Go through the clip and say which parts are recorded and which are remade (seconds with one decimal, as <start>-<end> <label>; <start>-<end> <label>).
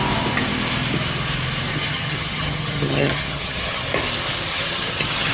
0.0-1.7 recorded; 1.7-3.8 remade; 3.8-4.5 recorded; 4.5-5.3 remade